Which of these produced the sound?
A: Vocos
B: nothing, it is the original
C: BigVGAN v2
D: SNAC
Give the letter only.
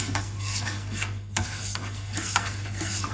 D